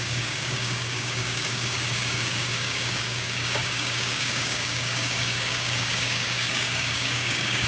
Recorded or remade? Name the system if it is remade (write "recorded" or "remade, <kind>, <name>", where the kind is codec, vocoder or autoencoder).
remade, codec, DAC